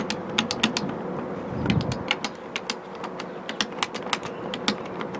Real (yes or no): yes